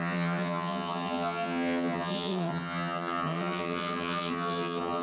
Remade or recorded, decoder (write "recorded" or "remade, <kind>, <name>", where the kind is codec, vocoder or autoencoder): remade, vocoder, HiFi-GAN